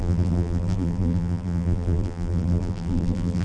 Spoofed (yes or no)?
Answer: yes